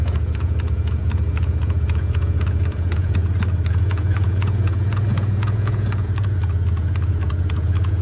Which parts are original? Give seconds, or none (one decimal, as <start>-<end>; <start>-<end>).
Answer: 3.2-3.7